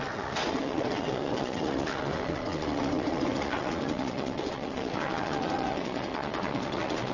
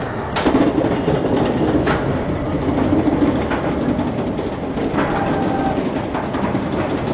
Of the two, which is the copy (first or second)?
first